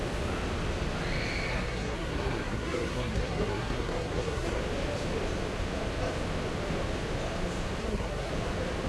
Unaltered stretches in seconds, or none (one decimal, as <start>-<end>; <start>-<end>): 0.0-1.5; 4.6-7.8; 8.3-8.9